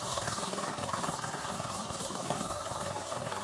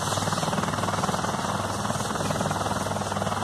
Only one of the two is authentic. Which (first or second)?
second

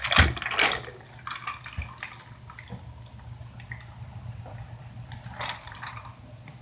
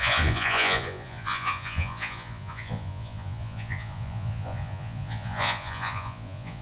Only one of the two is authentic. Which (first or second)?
first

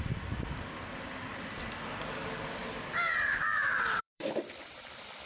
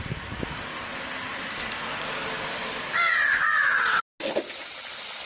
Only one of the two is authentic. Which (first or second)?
second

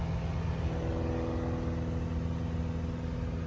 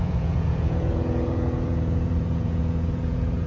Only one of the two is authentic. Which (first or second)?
first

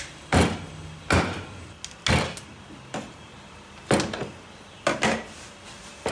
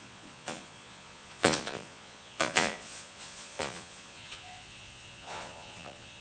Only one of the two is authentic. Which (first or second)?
first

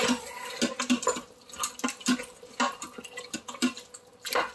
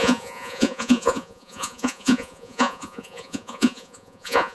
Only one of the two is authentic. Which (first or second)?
first